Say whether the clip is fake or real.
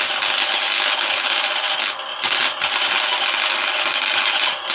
real